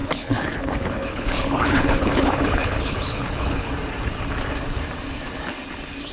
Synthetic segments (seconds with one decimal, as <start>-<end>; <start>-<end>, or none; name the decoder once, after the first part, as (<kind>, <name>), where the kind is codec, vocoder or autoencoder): 0.0-3.7 (codec, HILCodec)